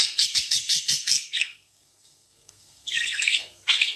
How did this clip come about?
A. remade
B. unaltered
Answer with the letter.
A